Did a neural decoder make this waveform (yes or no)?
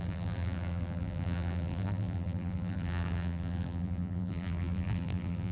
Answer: yes